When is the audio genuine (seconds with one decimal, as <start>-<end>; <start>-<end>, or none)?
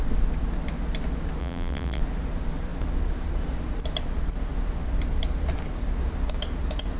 0.0-1.4; 2.0-7.0